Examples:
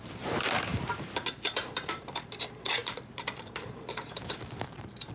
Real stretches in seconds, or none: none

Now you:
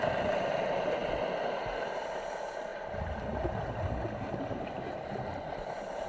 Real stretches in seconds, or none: 0.0-6.1